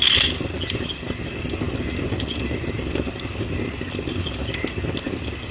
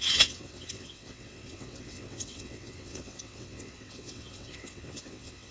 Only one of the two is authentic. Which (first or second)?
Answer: first